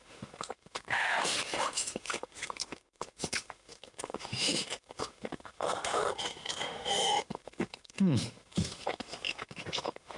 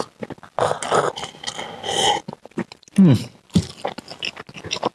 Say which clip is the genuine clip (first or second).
second